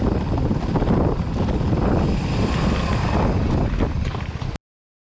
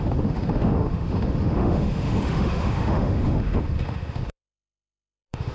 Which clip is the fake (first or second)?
second